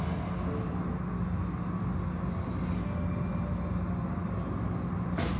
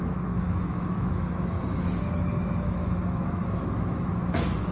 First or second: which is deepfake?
second